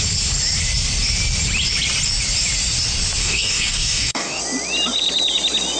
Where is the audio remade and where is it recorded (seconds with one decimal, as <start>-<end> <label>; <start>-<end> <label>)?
0.0-3.2 recorded; 3.2-4.4 remade; 4.4-5.8 recorded